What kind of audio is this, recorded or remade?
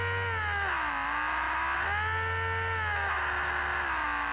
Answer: recorded